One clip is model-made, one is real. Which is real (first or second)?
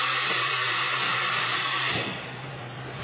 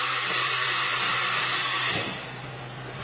second